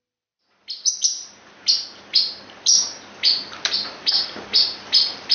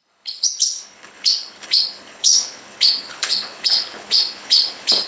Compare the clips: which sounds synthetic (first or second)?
second